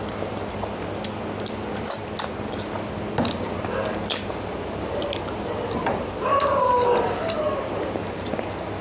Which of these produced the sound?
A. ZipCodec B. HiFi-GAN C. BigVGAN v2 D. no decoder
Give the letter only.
D